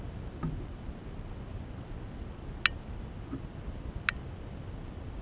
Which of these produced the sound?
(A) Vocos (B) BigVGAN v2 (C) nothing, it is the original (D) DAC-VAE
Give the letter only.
C